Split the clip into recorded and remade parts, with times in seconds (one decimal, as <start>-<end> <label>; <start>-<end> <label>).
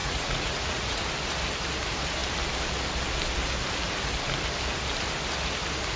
0.0-1.0 remade; 1.0-6.0 recorded